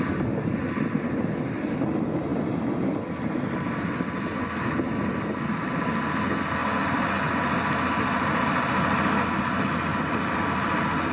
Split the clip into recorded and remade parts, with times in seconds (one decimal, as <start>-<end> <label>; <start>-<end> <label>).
0.0-11.1 recorded